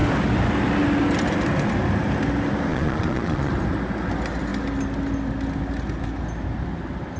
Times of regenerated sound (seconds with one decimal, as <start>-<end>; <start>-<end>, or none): 2.7-3.5